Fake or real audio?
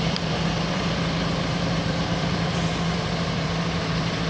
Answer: fake